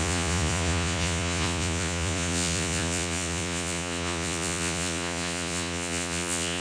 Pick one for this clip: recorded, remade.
remade